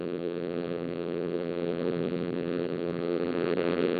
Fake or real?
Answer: fake